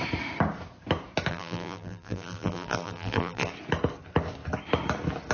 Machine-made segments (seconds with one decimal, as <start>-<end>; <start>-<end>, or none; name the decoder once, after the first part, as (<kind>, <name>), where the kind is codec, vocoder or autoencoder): 1.3-3.5 (vocoder, BigVGAN v2)